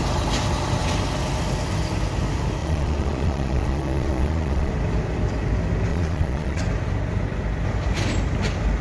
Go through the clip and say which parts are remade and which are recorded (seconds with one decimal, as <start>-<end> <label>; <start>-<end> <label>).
0.0-2.6 recorded; 2.6-4.7 remade; 4.7-5.9 recorded; 5.9-6.6 remade; 6.6-8.8 recorded